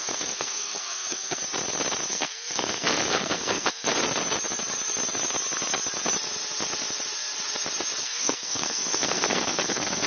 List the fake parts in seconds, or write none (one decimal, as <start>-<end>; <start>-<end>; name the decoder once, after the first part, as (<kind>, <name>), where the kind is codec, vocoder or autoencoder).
0.0-1.4 (codec, SNAC); 2.1-3.9; 8.0-10.1